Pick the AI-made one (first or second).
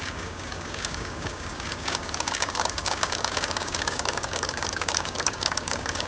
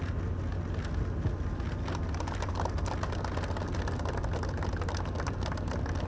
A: first